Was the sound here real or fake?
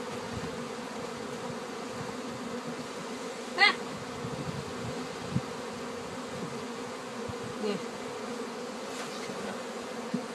fake